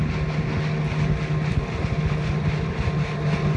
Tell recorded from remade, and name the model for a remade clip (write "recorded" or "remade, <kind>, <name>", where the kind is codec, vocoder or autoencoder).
recorded